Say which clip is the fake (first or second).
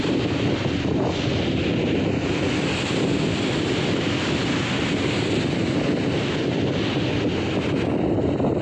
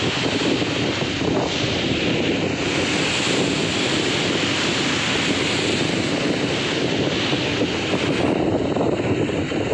second